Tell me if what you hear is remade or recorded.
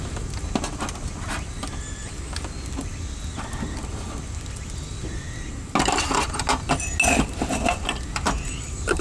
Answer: recorded